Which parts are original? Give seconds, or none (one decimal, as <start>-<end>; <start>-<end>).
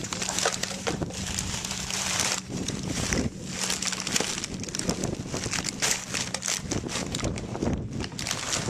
3.5-7.0; 7.6-8.7